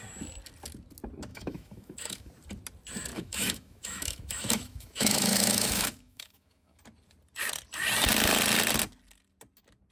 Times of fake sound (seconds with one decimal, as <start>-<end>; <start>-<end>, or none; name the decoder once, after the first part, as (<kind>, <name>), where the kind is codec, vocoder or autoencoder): 1.3-2.3 (autoencoder, DAC-VAE); 3.1-6.8